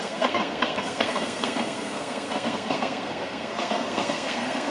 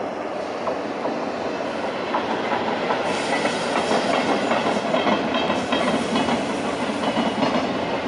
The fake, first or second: first